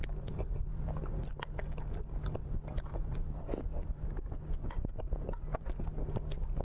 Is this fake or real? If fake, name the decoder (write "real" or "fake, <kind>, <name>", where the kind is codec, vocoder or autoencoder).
real